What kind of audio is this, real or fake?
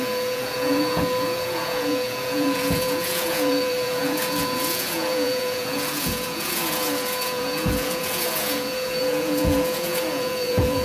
fake